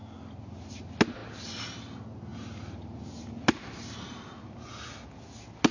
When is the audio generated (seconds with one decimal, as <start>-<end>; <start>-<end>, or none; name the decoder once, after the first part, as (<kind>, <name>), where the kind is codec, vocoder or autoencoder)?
none